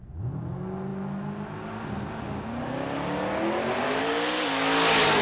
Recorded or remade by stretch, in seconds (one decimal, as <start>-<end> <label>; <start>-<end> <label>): 0.0-5.2 recorded